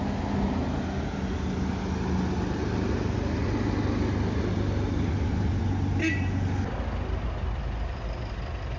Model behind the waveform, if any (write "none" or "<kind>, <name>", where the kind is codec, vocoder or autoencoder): none